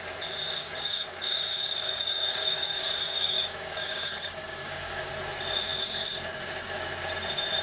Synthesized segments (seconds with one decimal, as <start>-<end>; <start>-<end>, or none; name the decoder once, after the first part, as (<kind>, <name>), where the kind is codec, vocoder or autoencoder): 0.6-5.1 (codec, DAC)